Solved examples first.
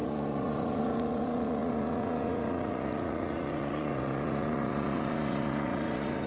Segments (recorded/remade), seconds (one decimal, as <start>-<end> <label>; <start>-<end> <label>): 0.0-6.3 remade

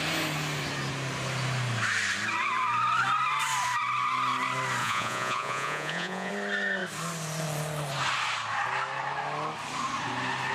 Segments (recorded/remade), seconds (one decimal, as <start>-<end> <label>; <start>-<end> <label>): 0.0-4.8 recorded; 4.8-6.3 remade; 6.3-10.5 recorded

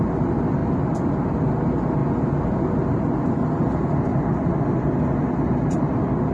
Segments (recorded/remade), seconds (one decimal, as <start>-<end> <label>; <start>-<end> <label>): 0.0-6.3 recorded

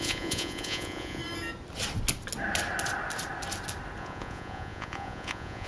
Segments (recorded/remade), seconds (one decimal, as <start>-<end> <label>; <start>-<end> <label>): 0.0-1.2 remade; 1.2-4.0 recorded; 4.0-5.7 remade